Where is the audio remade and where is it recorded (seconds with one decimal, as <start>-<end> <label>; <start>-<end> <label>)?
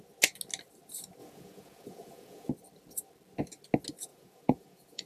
0.0-1.2 recorded; 1.2-2.5 remade; 2.5-4.1 recorded; 4.1-5.1 remade